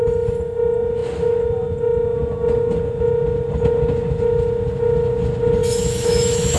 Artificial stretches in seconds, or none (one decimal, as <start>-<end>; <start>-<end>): 5.6-6.6